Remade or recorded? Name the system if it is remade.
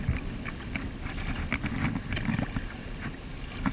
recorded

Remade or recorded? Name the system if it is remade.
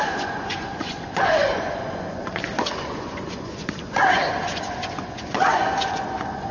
remade, vocoder, Vocos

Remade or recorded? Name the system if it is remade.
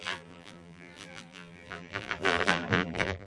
remade, vocoder, BigVGAN v2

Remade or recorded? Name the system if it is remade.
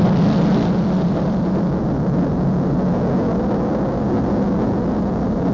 recorded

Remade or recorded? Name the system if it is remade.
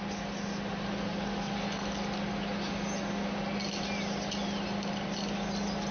recorded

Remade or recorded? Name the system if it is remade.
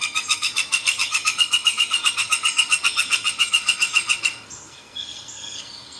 remade, codec, SNAC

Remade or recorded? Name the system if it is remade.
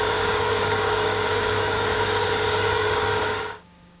remade, codec, DAC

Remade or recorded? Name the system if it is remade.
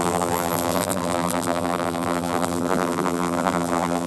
remade, vocoder, BigVGAN v2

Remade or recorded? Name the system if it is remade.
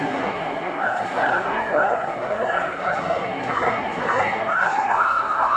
remade, codec, SNAC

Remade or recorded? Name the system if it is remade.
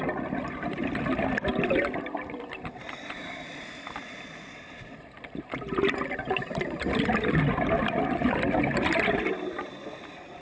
recorded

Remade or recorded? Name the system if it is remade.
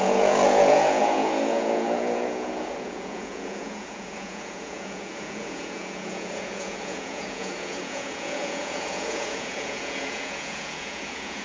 remade, vocoder, Vocos